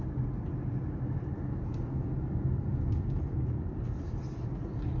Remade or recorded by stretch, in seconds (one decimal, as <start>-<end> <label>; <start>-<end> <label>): 0.0-5.0 recorded